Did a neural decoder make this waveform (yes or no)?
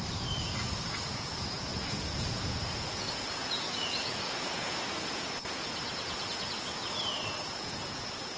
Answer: yes